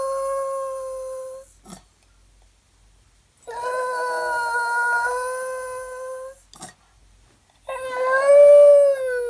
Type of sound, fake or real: real